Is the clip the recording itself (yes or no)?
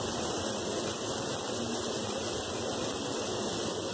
yes